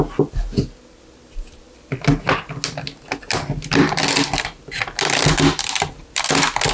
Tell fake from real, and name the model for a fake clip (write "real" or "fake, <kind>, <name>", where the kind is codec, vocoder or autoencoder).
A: real